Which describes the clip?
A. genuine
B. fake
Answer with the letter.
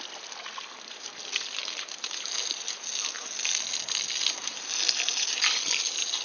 A